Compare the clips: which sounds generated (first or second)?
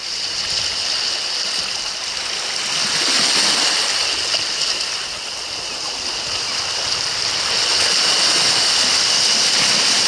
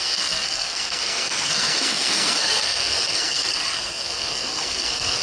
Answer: second